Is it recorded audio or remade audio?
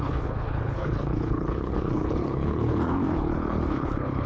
remade